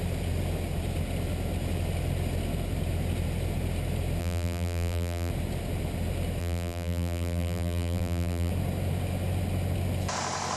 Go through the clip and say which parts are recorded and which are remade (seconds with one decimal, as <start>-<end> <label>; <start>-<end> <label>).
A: 0.0-4.2 recorded; 4.2-5.3 remade; 5.3-6.4 recorded; 6.4-8.5 remade; 8.5-10.6 recorded